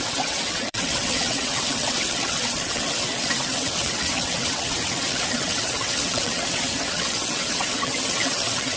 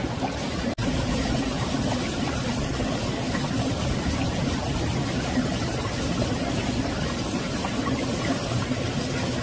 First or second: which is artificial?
first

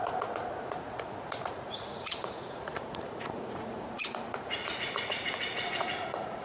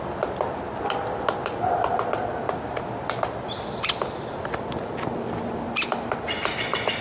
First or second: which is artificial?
first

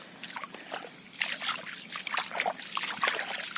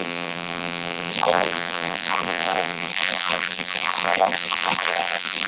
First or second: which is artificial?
second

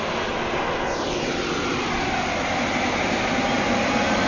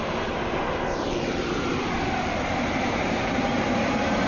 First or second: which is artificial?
second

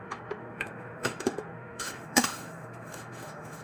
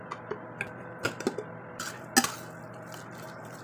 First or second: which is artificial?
first